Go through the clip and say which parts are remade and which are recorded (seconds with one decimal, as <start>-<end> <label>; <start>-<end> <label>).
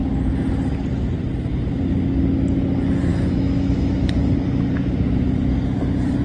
0.0-3.1 recorded; 3.1-4.3 remade; 4.3-6.2 recorded